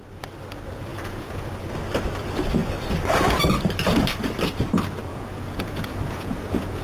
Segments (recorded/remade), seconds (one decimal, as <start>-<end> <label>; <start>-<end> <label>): 0.0-0.9 recorded; 0.9-1.5 remade; 1.5-5.1 recorded; 5.1-6.8 remade